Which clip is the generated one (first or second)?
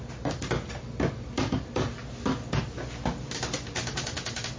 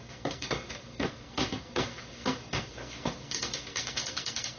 second